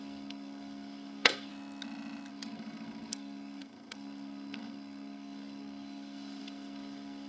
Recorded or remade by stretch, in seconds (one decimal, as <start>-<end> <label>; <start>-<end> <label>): 0.0-1.5 remade; 1.5-2.3 recorded; 2.3-7.3 remade

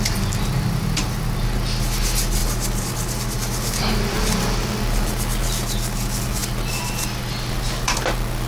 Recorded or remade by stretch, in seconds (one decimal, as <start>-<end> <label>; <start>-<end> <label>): 0.0-8.5 recorded